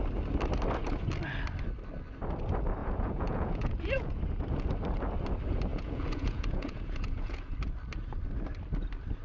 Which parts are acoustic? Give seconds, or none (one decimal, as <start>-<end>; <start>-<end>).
0.0-2.8; 4.2-5.7; 7.5-9.2